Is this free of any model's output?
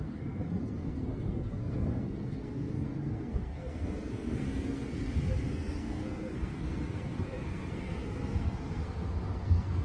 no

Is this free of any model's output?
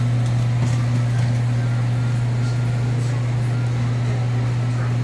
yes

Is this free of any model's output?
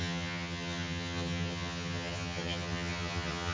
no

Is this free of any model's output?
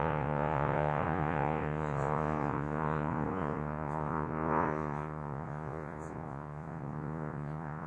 no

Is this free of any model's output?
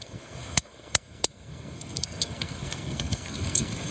no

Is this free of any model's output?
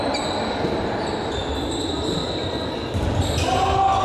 yes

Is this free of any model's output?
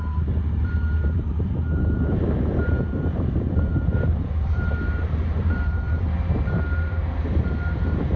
no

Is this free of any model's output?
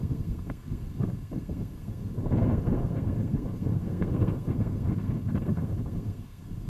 no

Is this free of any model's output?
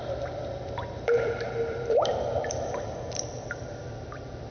no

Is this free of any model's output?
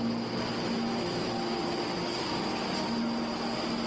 yes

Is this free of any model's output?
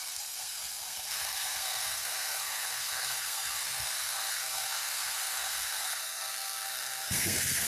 no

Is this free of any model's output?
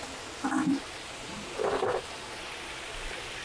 yes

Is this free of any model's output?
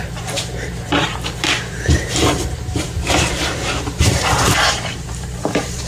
no